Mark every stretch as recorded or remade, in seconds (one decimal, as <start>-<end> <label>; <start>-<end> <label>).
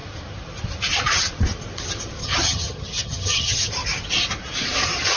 0.0-2.2 recorded; 2.2-3.7 remade; 3.7-5.2 recorded